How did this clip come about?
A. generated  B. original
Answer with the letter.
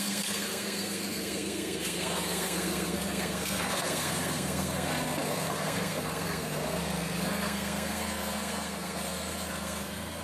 A